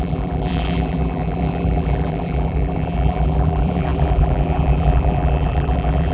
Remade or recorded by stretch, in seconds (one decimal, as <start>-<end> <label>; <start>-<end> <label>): 0.0-6.1 remade